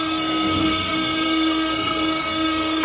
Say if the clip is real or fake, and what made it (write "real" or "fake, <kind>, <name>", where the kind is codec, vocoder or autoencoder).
fake, codec, SNAC